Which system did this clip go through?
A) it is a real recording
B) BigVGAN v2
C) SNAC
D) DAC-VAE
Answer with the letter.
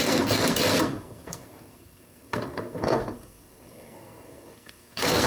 C